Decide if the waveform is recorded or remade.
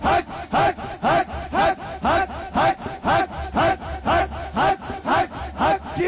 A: recorded